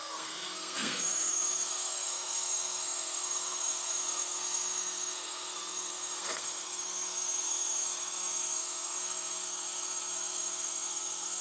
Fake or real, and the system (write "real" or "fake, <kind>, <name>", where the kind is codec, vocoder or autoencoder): fake, codec, SNAC